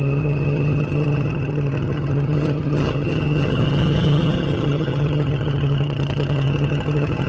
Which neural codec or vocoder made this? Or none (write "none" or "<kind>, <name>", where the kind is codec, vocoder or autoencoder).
vocoder, HiFi-GAN